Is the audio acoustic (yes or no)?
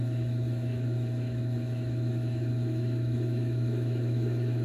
no